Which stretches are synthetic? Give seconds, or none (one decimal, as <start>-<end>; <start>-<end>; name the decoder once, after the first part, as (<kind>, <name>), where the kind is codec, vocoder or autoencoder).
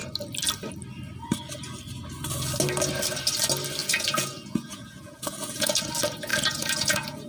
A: 3.8-5.8 (vocoder, Vocos); 6.3-7.3